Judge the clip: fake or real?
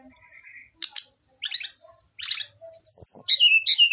real